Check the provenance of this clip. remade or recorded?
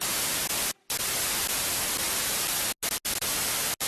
recorded